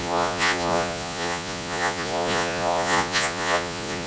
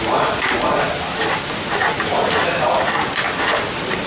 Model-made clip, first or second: first